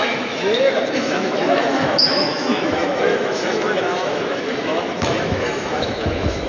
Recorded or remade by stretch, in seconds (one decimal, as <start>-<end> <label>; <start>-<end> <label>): 0.0-6.5 remade